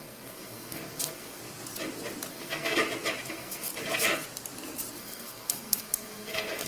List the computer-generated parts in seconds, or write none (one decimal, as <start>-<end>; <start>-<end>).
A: 0.0-1.4; 2.3-2.8; 3.3-3.7; 4.9-6.7